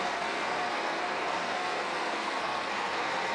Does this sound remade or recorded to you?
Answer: remade